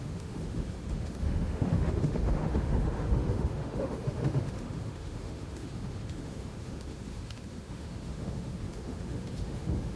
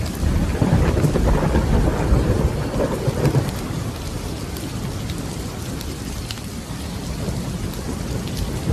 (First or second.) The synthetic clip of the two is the first